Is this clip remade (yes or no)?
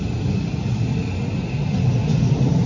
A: no